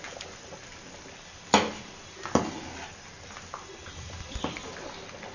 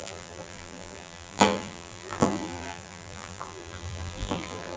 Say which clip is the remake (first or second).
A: second